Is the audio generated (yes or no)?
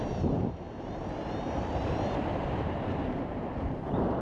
yes